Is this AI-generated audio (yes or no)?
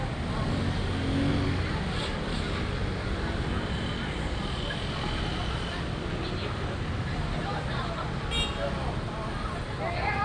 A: no